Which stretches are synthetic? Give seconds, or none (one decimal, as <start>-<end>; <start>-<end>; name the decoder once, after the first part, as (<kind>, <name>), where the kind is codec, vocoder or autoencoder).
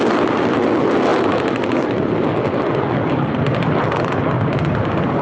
none